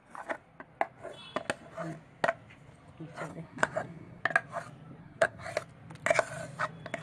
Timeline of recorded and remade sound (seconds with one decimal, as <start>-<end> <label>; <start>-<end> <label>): 0.0-3.3 recorded; 3.3-4.2 remade; 4.2-5.0 recorded; 5.0-5.5 remade; 5.5-7.0 recorded